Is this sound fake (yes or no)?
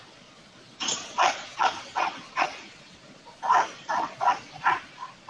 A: yes